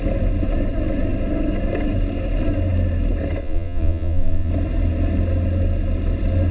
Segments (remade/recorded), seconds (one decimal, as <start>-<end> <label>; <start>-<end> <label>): 0.0-3.4 recorded; 3.4-4.5 remade; 4.5-6.5 recorded